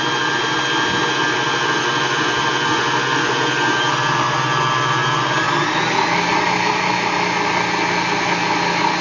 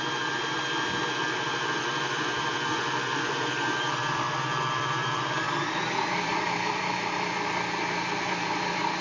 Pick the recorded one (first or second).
first